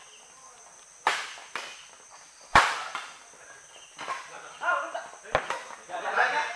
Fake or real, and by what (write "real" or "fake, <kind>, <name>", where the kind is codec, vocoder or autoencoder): real